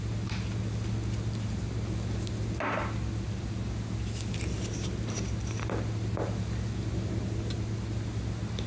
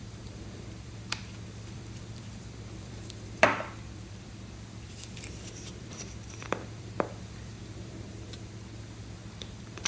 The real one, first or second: first